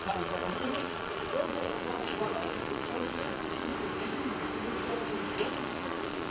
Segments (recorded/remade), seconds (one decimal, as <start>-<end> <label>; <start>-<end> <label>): 0.0-3.7 remade; 3.7-5.5 recorded; 5.5-6.3 remade